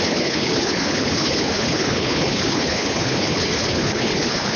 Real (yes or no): no